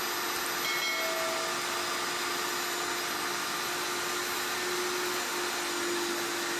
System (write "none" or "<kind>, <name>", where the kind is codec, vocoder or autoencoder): none